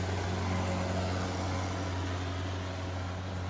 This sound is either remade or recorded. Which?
recorded